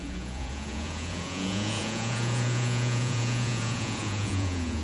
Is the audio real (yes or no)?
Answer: no